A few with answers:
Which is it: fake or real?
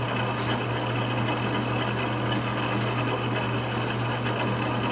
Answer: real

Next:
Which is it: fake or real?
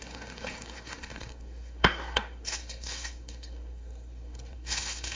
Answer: fake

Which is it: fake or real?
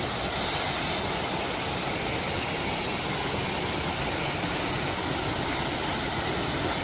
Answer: real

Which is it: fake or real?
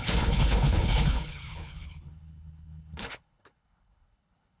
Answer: fake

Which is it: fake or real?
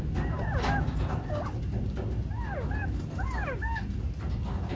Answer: real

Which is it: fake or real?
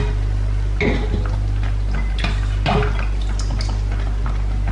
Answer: real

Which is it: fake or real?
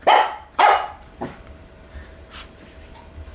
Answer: fake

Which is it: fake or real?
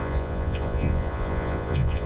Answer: fake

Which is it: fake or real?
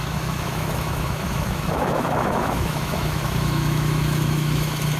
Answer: fake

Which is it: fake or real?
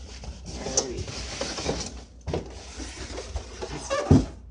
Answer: real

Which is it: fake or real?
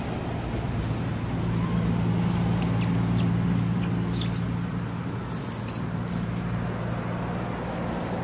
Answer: real